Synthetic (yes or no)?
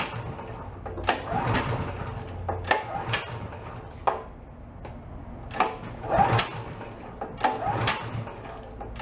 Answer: no